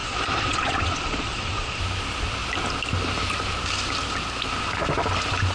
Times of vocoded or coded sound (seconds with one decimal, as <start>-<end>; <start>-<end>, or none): 0.0-1.8